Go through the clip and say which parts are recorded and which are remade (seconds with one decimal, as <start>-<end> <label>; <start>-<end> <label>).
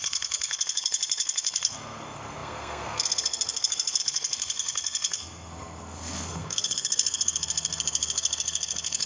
0.0-9.1 remade